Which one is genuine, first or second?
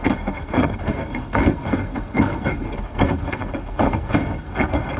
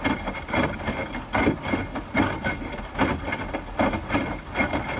second